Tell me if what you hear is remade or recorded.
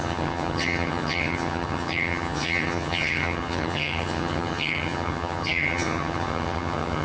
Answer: remade